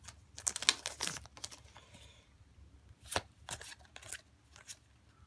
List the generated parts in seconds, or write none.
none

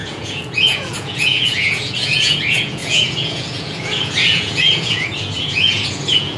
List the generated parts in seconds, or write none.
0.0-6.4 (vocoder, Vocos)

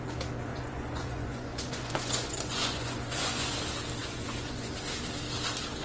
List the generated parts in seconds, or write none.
0.5-3.6 (vocoder, Vocos); 4.0-4.7

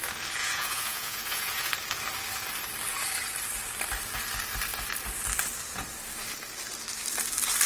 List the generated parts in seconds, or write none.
0.4-1.7 (vocoder, Vocos)